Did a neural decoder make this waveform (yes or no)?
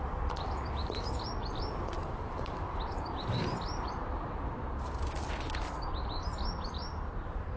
yes